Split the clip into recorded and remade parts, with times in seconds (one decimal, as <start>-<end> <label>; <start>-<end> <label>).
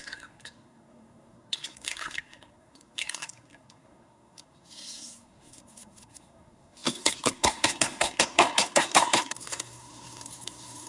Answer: 0.0-10.9 remade